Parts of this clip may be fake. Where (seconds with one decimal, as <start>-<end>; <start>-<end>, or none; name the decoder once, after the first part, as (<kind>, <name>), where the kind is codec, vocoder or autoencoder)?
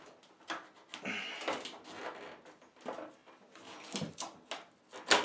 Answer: none